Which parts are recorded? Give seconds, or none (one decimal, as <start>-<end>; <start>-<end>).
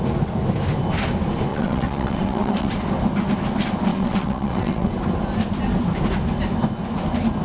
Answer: 0.0-1.5; 2.7-3.9; 4.9-7.4